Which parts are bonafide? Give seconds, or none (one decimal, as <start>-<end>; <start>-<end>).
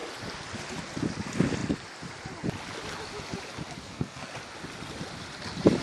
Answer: 0.0-3.8; 4.3-5.8